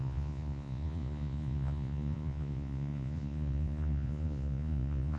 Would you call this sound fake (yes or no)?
yes